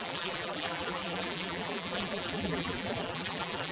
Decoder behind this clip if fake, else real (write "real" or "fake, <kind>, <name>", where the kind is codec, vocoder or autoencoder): fake, vocoder, BigVGAN v2